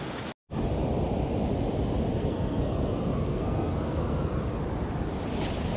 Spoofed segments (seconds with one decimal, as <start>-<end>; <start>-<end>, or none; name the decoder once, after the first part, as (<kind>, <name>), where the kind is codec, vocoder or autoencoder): 2.1-4.3 (codec, SNAC)